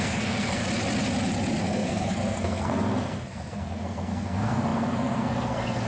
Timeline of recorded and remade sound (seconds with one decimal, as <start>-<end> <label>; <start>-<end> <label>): 0.0-0.6 remade; 0.6-1.6 recorded; 1.6-5.9 remade